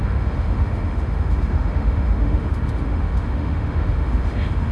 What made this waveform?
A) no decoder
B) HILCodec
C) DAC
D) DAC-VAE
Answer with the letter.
D